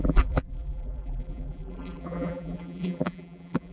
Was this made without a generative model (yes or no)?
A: no